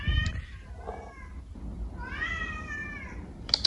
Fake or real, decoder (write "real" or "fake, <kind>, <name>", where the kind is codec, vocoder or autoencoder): real